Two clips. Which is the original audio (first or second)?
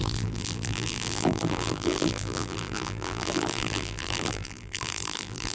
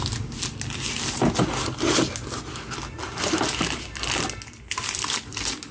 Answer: second